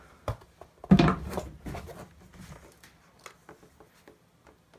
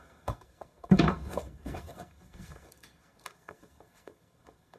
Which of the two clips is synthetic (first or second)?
second